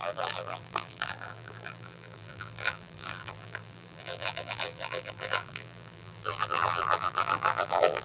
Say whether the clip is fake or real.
fake